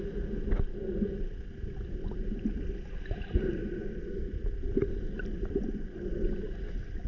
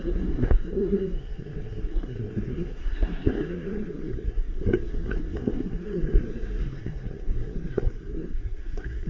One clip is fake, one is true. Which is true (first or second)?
first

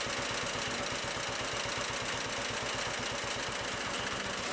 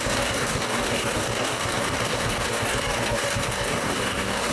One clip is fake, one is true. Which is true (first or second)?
first